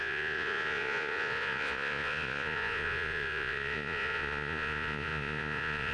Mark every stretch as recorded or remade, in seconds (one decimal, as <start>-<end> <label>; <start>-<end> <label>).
0.0-5.9 remade

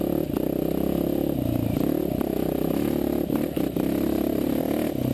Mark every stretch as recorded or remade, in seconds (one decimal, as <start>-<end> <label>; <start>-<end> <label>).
0.0-2.3 recorded; 2.3-4.6 remade; 4.6-5.1 recorded

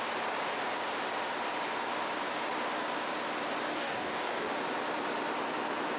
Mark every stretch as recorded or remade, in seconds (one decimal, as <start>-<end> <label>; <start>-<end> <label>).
0.0-3.7 recorded; 3.7-4.5 remade; 4.5-6.0 recorded

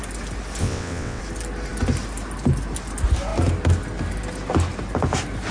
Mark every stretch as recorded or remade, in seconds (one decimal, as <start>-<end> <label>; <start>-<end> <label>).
0.0-0.6 recorded; 0.6-1.2 remade; 1.2-5.5 recorded

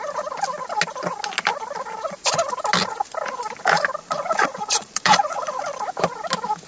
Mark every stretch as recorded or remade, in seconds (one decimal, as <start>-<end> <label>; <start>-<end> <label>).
0.0-4.0 recorded; 4.0-5.6 remade; 5.6-6.7 recorded

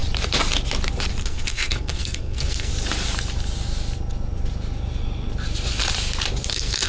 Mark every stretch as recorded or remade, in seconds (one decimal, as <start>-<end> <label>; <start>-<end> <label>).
0.0-1.2 recorded; 1.2-2.7 remade; 2.7-6.5 recorded; 6.5-6.9 remade